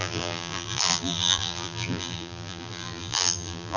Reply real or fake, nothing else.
fake